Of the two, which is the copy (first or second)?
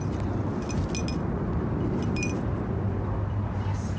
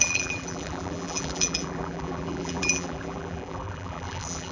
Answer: second